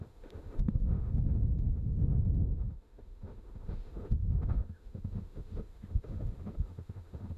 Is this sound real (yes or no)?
no